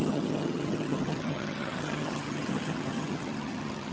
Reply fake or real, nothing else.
fake